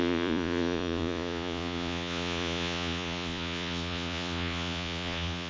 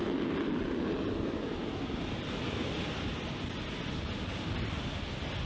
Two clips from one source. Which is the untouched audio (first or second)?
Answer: second